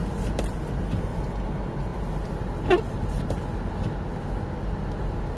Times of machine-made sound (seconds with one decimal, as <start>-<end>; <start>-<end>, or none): none